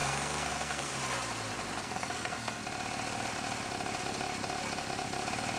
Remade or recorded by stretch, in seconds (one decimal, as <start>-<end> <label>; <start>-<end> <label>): 0.0-0.9 remade; 0.9-1.8 recorded; 1.8-2.6 remade; 2.6-5.6 recorded